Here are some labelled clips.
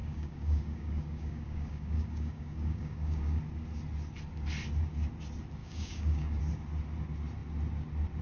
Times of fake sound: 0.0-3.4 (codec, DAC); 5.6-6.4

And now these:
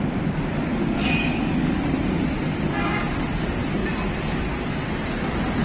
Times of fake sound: 0.7-1.8 (codec, DAC)